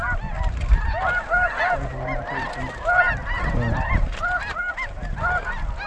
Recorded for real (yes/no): yes